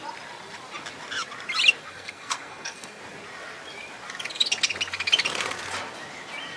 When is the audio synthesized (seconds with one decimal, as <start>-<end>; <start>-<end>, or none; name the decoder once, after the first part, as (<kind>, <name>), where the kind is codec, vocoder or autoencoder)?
1.8-3.0 (codec, SNAC)